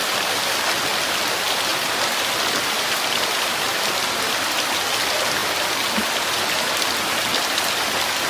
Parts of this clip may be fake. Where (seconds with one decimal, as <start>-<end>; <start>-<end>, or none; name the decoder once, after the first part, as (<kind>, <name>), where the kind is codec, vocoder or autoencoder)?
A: none